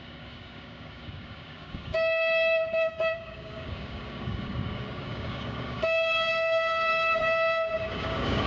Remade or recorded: remade